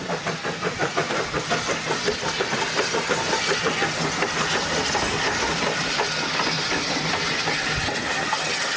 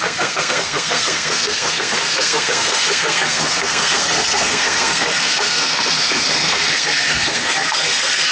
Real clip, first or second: first